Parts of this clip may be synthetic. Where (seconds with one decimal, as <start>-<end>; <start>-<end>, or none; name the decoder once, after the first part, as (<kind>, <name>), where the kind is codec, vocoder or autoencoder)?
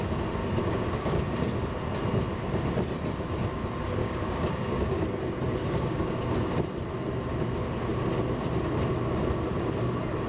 0.4-1.3 (codec, DAC); 4.0-5.0; 5.6-6.5